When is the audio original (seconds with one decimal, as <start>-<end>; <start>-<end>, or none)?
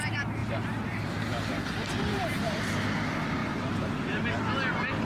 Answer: 0.0-0.4; 1.0-2.1; 2.7-3.4; 4.2-5.1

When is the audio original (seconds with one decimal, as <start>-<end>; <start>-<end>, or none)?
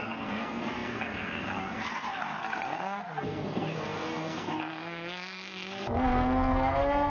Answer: none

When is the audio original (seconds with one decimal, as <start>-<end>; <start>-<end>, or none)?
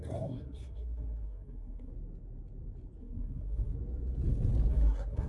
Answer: 1.9-3.0; 3.7-4.7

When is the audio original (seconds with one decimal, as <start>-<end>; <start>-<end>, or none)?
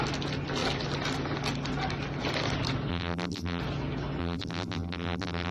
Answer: 0.0-2.9; 3.6-4.2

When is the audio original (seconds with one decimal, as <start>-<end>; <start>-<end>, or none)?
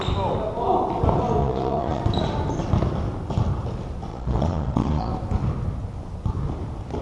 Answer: 0.0-1.4; 2.0-4.1; 5.1-7.0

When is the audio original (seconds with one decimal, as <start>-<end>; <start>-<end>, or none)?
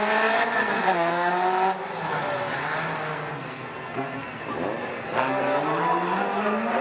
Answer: 0.0-0.6; 1.3-3.1; 4.4-4.9; 5.6-6.8